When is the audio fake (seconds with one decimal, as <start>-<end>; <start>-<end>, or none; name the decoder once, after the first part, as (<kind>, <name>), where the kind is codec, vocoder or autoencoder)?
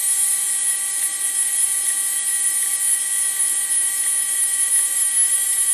none